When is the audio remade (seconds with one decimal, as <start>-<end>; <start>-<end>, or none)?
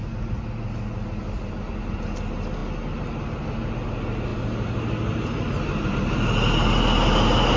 none